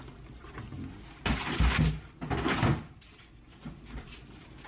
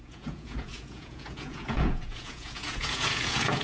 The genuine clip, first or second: first